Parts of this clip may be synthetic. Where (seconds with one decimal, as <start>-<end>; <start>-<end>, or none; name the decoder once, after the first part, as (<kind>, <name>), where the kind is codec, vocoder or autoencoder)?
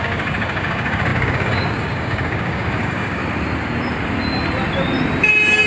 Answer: 0.0-3.2 (codec, DAC)